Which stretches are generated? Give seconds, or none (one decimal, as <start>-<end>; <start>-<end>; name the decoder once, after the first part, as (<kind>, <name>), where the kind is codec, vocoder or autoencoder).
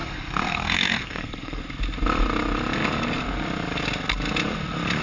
0.0-1.6 (codec, SNAC)